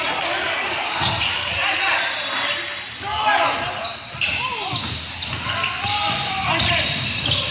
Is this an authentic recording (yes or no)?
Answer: yes